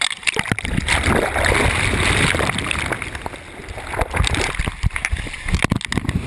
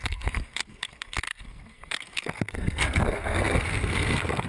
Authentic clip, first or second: first